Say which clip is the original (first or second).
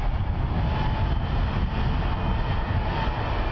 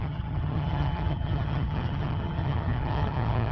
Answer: first